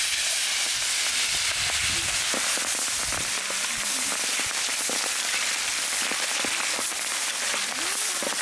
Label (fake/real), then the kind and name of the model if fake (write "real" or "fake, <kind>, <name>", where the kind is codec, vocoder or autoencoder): real